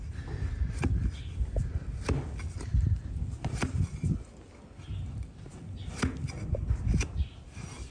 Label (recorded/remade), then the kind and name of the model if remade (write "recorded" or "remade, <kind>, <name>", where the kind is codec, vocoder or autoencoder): recorded